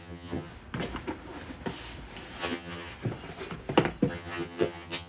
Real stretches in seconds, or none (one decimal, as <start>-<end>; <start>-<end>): 0.5-2.4; 2.9-4.1